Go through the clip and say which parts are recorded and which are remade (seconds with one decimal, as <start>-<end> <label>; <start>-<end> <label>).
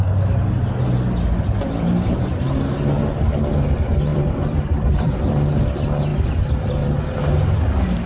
0.0-4.1 recorded; 4.1-5.1 remade; 5.1-6.1 recorded; 6.1-7.0 remade; 7.0-8.1 recorded